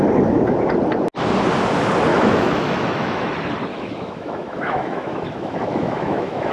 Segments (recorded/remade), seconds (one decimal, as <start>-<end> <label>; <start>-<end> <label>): 0.0-2.1 recorded; 2.1-3.3 remade; 3.3-3.7 recorded; 3.7-6.5 remade